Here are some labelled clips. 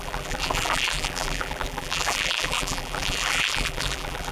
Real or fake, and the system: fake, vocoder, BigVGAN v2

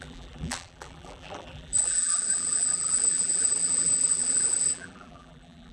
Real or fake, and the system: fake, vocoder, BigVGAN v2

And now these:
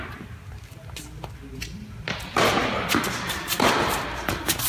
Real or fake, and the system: real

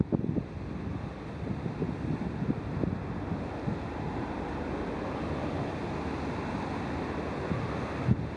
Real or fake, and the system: real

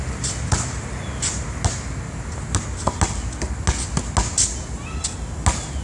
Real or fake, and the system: real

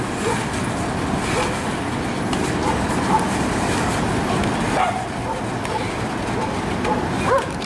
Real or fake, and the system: real